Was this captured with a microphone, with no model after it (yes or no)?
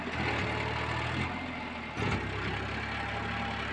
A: yes